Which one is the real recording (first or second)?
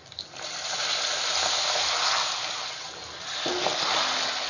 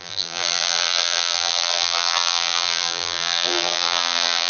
first